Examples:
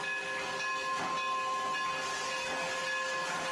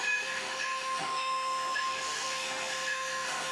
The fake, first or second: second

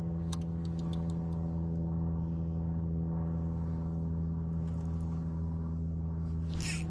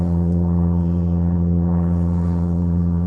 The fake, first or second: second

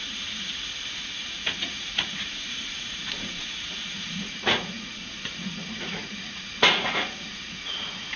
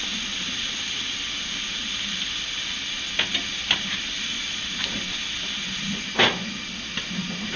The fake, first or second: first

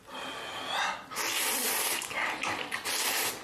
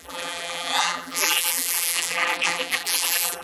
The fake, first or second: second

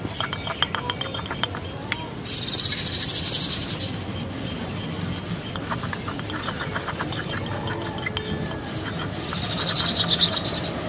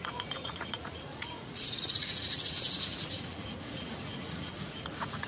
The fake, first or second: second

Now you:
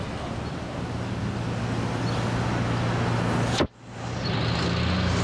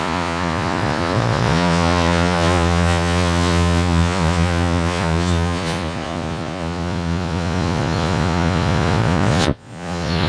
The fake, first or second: second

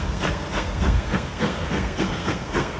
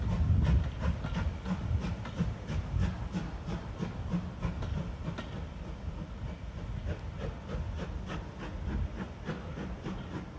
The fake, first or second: first